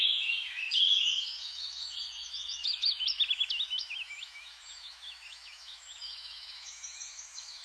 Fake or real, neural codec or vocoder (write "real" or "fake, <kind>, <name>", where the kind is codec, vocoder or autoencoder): fake, autoencoder, DAC-VAE